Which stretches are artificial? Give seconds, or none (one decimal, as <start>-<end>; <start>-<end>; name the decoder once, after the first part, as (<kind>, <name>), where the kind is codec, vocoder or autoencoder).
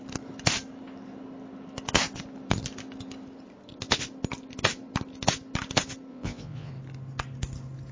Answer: 6.1-6.7 (vocoder, Vocos)